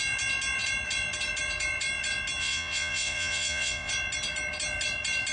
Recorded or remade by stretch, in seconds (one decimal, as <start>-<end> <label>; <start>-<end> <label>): 0.0-2.4 recorded; 2.4-3.9 remade; 3.9-5.3 recorded